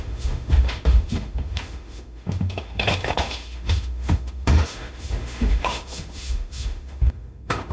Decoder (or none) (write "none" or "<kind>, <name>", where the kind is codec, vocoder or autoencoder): autoencoder, DAC-VAE